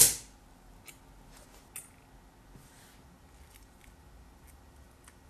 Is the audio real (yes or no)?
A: yes